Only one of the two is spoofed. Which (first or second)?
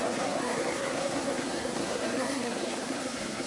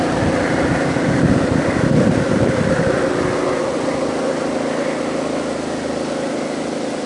first